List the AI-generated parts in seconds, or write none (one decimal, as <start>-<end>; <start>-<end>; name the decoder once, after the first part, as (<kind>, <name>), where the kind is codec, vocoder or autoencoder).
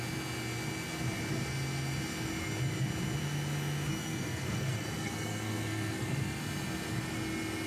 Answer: 3.9-6.4 (codec, SNAC)